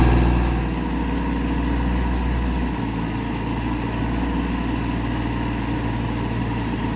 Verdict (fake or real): real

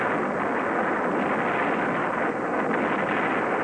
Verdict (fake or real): real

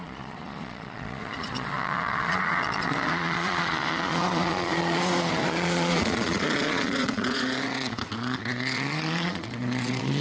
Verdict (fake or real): fake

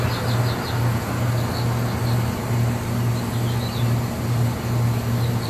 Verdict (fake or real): real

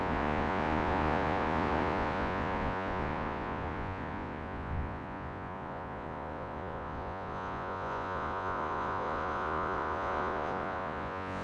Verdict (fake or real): fake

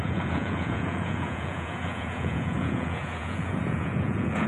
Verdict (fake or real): fake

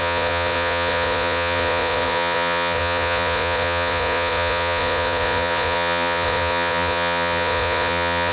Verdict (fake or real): fake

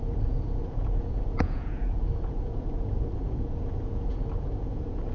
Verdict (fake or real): fake